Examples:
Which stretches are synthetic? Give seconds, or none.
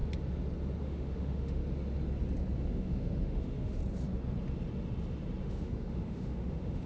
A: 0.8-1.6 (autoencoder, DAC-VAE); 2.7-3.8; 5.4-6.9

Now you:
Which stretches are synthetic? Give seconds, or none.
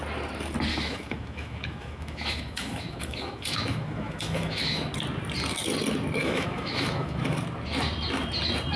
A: 0.7-4.9 (autoencoder, DAC-VAE); 6.2-7.2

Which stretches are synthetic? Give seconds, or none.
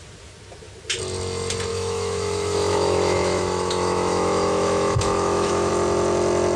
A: 1.7-5.7 (autoencoder, DAC-VAE)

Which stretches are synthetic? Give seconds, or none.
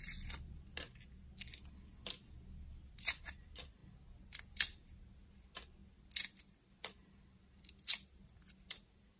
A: none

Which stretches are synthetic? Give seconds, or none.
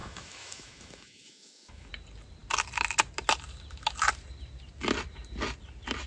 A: 0.0-1.9 (autoencoder, DAC-VAE)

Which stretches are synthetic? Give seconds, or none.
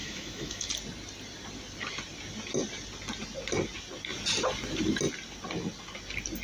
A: 0.0-0.7 (autoencoder, DAC-VAE)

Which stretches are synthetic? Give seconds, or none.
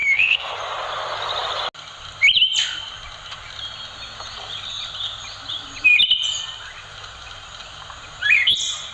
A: 0.0-0.5 (autoencoder, DAC-VAE)